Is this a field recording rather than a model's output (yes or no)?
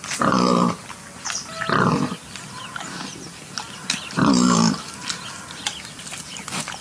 yes